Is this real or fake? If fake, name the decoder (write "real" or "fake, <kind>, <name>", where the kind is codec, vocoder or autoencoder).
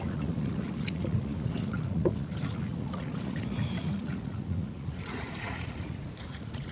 fake, vocoder, Vocos